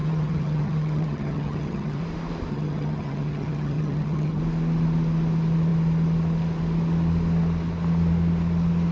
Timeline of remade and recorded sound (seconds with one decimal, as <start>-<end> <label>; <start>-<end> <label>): 0.0-2.0 remade; 2.0-2.5 recorded; 2.5-4.4 remade; 4.4-8.9 recorded